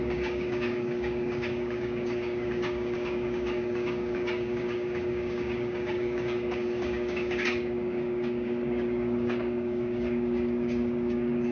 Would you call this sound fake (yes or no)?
yes